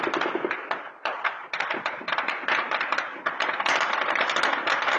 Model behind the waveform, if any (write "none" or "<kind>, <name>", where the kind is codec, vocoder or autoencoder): none